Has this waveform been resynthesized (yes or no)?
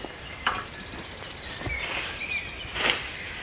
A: no